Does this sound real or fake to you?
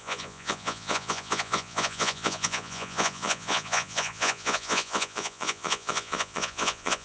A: fake